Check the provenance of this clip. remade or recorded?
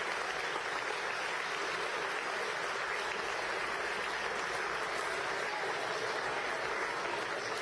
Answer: recorded